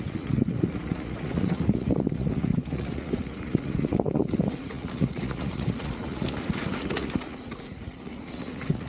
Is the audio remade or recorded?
remade